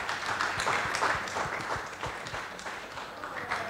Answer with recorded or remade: remade